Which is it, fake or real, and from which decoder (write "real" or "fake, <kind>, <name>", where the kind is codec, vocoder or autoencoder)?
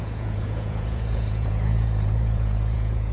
fake, vocoder, Vocos